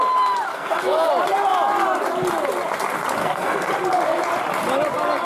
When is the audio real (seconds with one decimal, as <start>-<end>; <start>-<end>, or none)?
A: 0.0-0.5; 1.1-3.2; 3.7-5.2